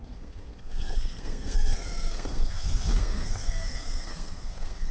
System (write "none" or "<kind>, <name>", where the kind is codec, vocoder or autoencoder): codec, SNAC